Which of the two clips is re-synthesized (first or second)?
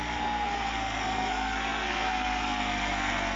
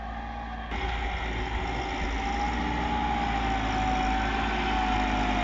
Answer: first